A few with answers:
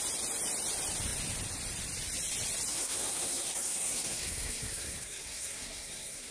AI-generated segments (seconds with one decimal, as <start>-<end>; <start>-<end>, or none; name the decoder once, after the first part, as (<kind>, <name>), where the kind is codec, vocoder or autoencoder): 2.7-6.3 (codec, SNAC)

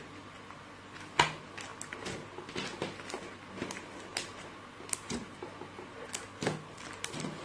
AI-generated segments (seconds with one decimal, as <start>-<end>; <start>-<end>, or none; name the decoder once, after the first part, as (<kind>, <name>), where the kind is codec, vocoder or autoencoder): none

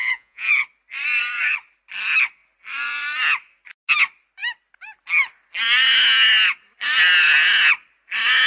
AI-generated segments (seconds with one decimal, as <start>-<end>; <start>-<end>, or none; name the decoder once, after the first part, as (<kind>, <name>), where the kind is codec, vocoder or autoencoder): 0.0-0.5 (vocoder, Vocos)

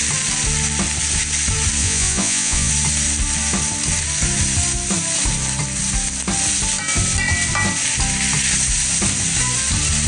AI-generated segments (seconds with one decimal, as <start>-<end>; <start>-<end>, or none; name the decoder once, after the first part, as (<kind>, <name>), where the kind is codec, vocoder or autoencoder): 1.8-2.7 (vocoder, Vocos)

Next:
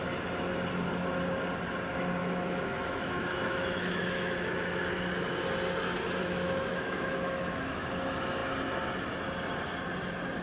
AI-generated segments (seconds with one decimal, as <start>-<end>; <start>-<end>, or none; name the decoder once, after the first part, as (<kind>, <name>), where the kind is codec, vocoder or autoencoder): 2.2-4.9 (autoencoder, DAC-VAE); 6.2-7.9

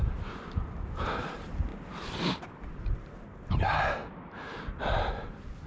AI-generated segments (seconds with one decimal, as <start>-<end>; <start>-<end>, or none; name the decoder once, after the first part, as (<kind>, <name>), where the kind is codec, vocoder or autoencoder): 0.0-4.0 (vocoder, BigVGAN v2); 5.3-5.7